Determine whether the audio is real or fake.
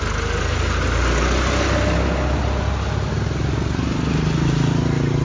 real